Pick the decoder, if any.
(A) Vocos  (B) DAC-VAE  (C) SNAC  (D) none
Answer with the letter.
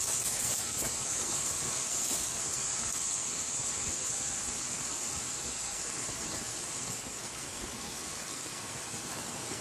C